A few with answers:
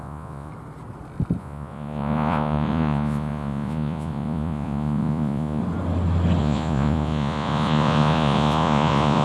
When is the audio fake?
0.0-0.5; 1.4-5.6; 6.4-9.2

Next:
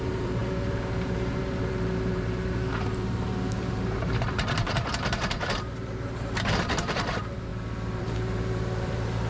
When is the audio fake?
0.0-7.5; 8.0-9.3

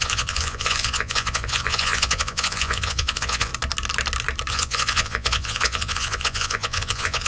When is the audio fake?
0.0-3.5; 4.5-7.3